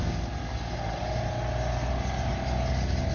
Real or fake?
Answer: real